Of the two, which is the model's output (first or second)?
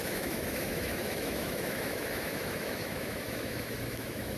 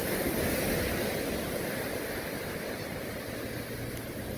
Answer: first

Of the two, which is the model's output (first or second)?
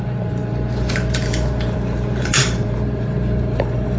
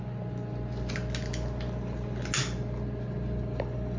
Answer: first